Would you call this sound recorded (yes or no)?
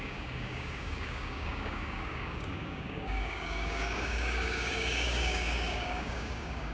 no